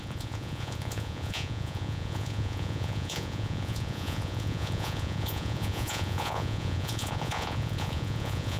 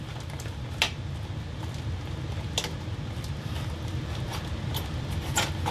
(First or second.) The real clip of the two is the second